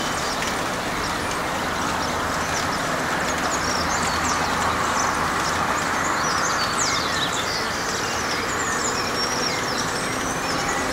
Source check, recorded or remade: recorded